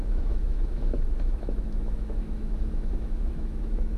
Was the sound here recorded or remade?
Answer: remade